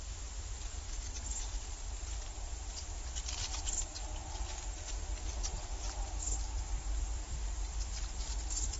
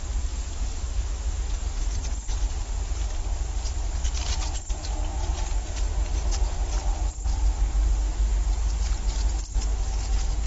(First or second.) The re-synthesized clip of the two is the first